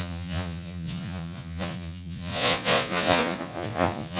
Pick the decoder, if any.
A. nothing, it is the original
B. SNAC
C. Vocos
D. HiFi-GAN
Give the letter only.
C